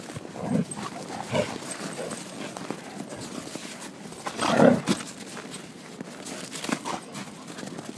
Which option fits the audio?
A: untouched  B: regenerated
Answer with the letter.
A